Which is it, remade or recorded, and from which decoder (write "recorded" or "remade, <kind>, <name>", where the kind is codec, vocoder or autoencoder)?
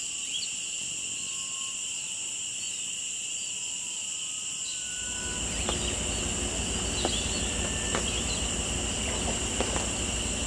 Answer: recorded